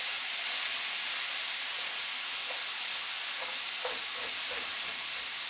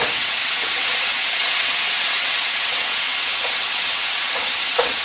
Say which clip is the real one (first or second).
first